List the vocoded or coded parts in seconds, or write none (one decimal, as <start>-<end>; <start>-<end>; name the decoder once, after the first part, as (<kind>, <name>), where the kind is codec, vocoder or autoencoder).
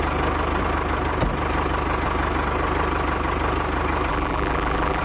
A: 4.1-5.0 (vocoder, BigVGAN v2)